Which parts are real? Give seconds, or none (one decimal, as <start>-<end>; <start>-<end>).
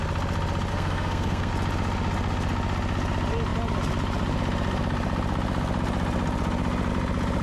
0.0-0.7; 1.5-7.4